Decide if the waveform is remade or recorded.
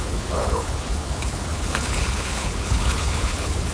remade